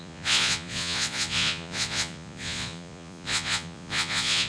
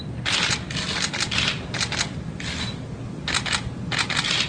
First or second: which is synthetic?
first